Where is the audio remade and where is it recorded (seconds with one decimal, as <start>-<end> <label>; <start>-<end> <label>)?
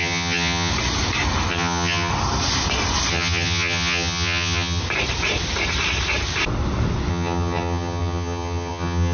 0.0-0.7 remade; 0.7-1.5 recorded; 1.5-2.1 remade; 2.1-3.1 recorded; 3.1-4.8 remade; 4.8-7.1 recorded; 7.1-9.1 remade